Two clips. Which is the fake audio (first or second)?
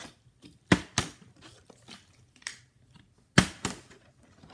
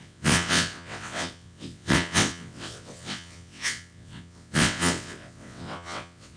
second